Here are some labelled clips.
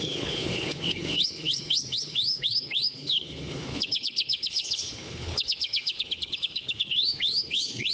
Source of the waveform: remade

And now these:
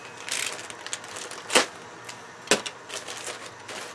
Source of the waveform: recorded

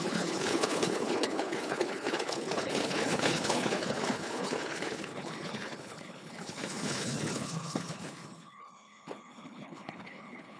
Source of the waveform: remade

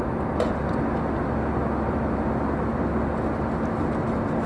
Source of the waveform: recorded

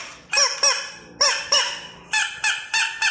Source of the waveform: recorded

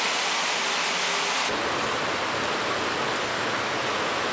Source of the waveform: recorded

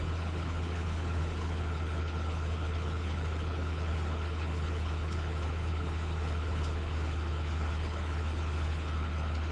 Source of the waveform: remade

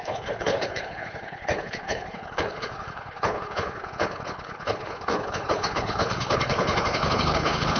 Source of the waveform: remade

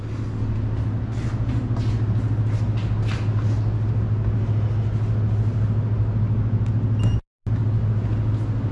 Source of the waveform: recorded